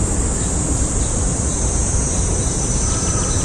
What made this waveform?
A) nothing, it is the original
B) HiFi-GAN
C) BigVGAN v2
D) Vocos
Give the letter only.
C